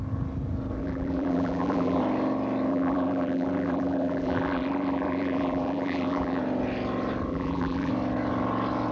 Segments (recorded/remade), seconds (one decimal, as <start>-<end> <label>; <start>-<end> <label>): 0.0-0.8 recorded; 0.8-2.0 remade; 2.0-2.7 recorded; 2.7-6.4 remade; 6.4-7.3 recorded; 7.3-7.9 remade; 7.9-8.9 recorded